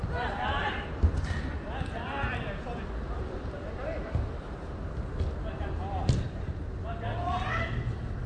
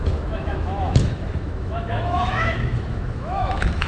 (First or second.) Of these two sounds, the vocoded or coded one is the second